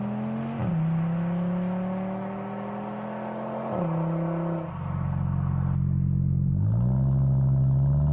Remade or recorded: recorded